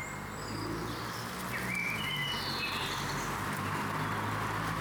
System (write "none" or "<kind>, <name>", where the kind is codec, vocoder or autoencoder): none